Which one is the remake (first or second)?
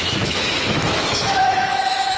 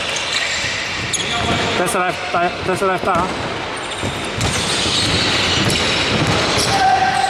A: first